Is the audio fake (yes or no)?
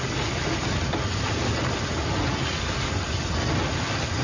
no